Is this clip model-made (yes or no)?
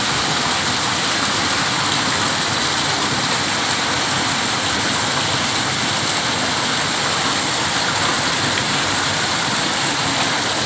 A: no